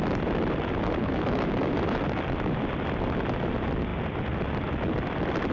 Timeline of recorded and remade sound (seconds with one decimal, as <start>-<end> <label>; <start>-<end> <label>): 0.0-1.0 recorded; 1.0-1.7 remade; 1.7-5.5 recorded